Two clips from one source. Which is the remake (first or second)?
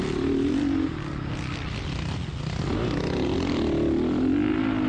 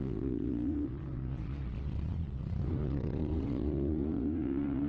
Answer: second